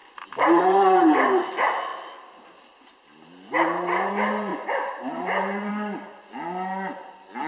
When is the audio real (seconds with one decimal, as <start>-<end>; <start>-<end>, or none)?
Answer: 1.3-4.5; 5.7-7.5